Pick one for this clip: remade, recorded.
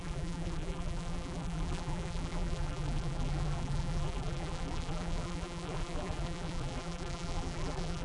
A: remade